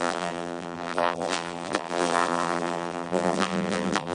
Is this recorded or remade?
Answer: remade